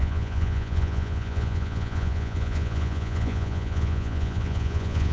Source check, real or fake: fake